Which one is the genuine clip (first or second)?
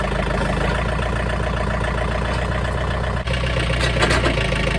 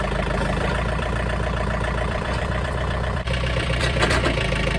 first